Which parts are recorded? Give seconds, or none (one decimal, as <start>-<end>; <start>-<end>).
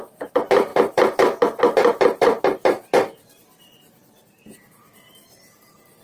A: none